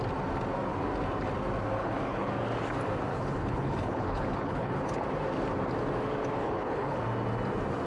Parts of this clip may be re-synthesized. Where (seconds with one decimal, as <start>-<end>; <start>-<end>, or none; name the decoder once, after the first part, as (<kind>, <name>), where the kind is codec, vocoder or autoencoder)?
1.8-2.3 (codec, HILCodec); 3.1-4.8; 6.4-7.0